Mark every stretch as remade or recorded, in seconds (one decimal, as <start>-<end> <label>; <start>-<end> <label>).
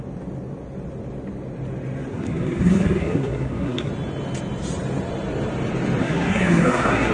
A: 0.0-2.1 recorded; 2.1-3.9 remade; 3.9-6.0 recorded; 6.0-7.1 remade